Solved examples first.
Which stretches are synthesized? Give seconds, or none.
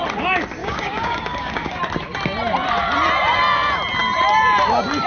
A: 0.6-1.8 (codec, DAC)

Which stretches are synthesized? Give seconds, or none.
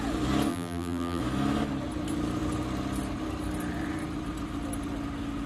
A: 0.5-1.2 (vocoder, BigVGAN v2)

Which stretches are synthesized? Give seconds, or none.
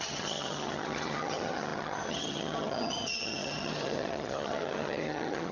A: 0.0-5.5 (vocoder, HiFi-GAN)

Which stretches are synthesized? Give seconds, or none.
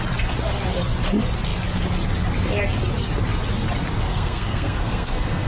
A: 4.1-5.5 (codec, SNAC)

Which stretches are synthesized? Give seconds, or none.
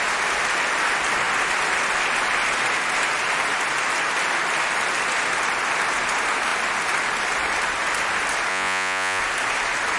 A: 8.5-9.2 (vocoder, Vocos)